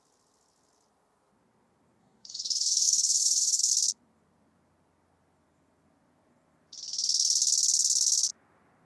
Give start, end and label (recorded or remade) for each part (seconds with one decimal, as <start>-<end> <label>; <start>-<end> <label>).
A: 0.0-2.0 recorded; 2.0-3.7 remade; 3.7-8.9 recorded